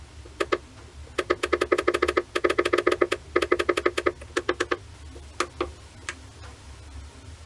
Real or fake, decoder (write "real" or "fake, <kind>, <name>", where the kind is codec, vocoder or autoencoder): real